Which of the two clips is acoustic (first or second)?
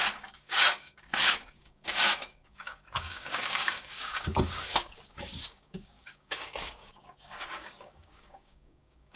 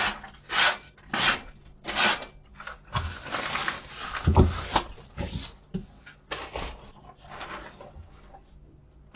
second